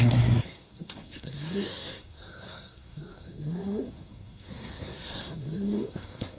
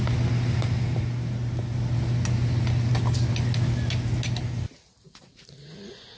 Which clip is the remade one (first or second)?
first